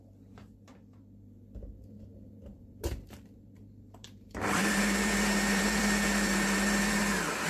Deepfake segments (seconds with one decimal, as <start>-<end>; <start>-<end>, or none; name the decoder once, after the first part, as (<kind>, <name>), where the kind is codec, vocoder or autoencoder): 2.5-7.0 (vocoder, BigVGAN v2)